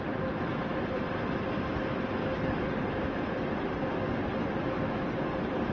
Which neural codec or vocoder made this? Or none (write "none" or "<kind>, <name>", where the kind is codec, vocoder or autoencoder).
vocoder, BigVGAN v2